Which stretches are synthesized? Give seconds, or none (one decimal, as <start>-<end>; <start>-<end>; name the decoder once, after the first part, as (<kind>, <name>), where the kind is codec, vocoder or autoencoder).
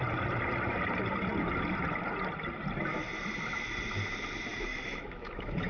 4.5-5.7 (autoencoder, DAC-VAE)